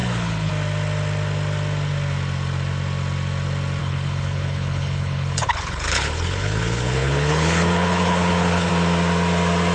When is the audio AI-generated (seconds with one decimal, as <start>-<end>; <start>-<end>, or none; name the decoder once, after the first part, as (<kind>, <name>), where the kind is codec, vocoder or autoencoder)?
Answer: 0.0-0.5 (codec, HILCodec); 3.8-8.7